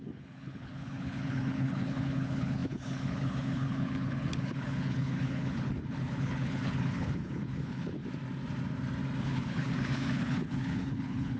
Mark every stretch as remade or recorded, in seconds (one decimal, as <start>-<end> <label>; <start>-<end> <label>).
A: 0.0-8.0 remade; 8.0-9.2 recorded; 9.2-11.4 remade

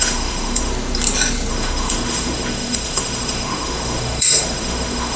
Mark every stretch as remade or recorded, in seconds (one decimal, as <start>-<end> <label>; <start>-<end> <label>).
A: 0.0-0.7 remade; 0.7-1.5 recorded; 1.5-5.2 remade